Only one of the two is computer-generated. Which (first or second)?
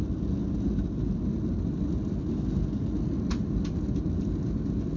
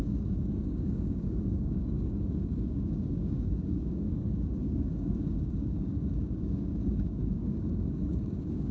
second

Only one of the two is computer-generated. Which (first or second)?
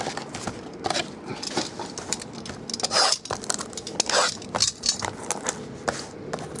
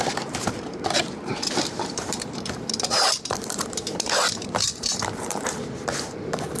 second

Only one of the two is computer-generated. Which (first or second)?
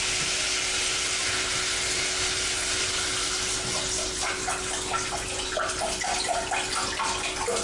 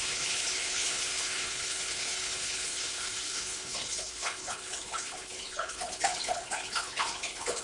second